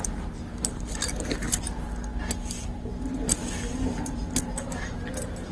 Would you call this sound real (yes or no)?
no